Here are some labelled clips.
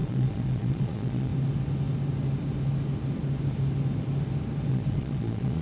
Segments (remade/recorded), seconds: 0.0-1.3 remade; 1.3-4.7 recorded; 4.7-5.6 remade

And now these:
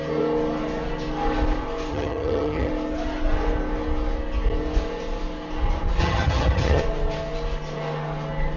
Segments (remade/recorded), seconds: 0.0-1.9 recorded; 1.9-2.7 remade; 2.7-6.0 recorded; 6.0-6.8 remade; 6.8-8.6 recorded

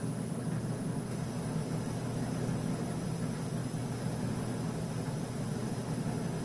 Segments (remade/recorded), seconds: 0.0-6.4 recorded